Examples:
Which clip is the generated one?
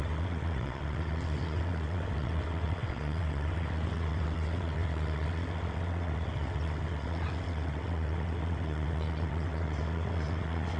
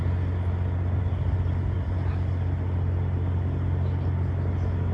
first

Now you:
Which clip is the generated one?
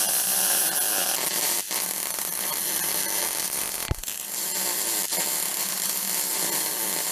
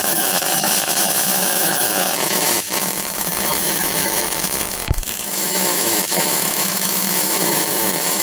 second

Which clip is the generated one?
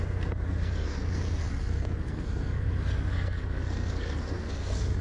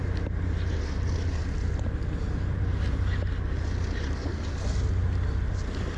first